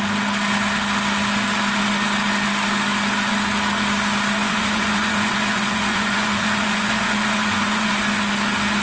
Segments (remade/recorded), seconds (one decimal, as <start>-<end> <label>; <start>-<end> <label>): 0.0-4.4 recorded; 4.4-7.9 remade; 7.9-8.8 recorded